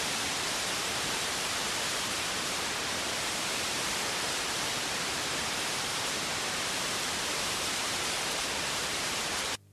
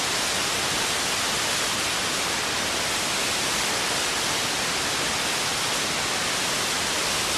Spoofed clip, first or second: first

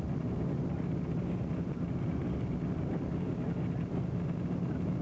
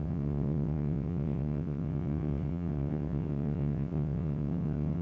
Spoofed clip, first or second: second